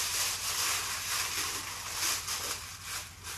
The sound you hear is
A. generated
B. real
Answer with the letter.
B